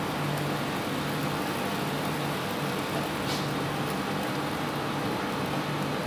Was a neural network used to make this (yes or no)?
no